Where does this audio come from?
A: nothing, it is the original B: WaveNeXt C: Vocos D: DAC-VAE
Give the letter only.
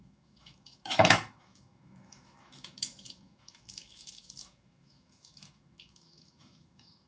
D